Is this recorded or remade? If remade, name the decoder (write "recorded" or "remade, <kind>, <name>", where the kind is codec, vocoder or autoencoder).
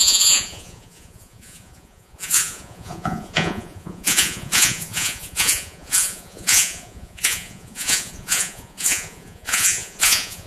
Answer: remade, vocoder, Vocos